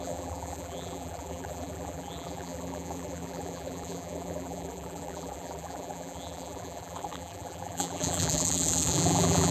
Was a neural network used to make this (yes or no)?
yes